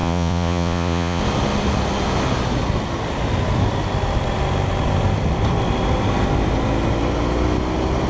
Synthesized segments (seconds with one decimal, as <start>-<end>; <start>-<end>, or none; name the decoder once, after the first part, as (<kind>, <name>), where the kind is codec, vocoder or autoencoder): 0.0-1.2 (vocoder, Vocos)